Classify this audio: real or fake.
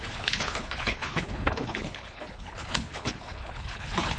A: fake